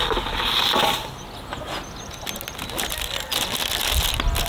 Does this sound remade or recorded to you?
recorded